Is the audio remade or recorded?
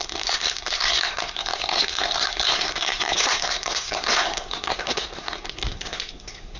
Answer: remade